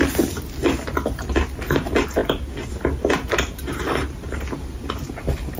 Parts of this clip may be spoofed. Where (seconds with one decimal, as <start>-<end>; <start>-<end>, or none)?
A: none